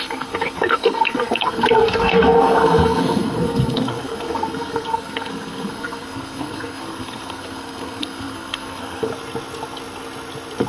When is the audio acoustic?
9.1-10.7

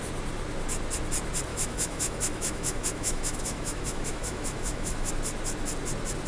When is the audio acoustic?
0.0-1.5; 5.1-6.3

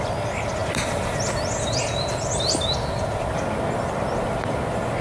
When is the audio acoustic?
0.0-5.0

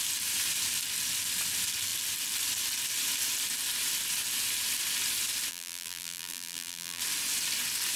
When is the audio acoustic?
0.0-5.5; 7.0-8.0

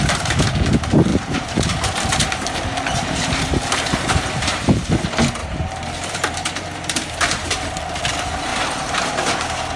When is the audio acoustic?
0.0-1.1; 4.9-5.4; 7.7-9.8